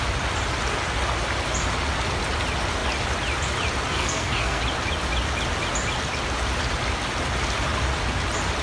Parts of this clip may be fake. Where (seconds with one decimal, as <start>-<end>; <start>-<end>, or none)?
3.9-4.6